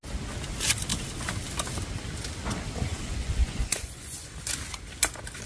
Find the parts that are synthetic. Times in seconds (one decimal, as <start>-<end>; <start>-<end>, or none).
2.9-4.3